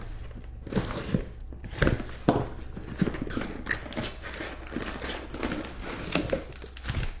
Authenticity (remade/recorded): recorded